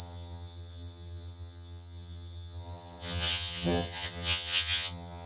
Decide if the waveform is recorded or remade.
remade